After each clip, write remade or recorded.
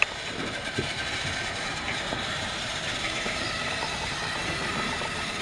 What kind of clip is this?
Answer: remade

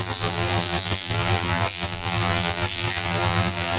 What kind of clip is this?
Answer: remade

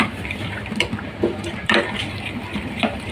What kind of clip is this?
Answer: remade